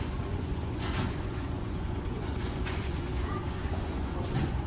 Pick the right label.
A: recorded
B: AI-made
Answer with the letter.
B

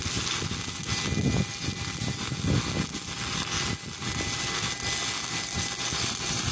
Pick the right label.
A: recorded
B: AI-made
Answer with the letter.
A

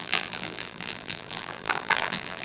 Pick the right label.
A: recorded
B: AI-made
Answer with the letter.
B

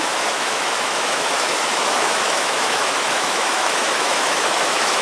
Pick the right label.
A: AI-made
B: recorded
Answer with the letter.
A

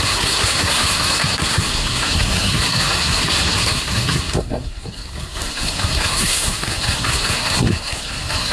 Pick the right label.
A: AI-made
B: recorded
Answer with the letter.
A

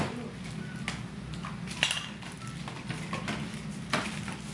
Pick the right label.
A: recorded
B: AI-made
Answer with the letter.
A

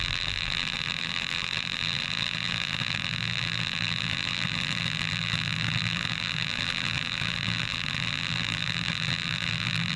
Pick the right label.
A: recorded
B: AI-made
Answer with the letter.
B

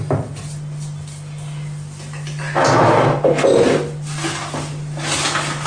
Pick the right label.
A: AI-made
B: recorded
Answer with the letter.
B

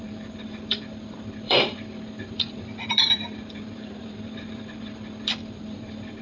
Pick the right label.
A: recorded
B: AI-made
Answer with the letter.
B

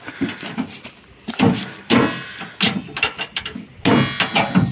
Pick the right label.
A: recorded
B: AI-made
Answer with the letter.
A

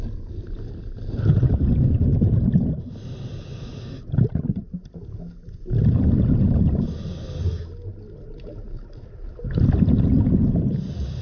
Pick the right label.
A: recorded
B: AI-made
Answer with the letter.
A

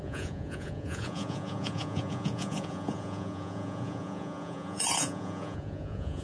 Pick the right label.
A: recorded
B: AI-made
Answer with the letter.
B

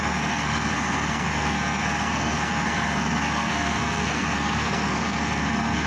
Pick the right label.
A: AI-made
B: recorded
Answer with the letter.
A